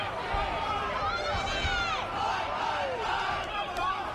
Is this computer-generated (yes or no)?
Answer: no